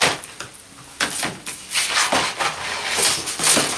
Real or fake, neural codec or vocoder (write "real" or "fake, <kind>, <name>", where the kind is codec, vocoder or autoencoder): real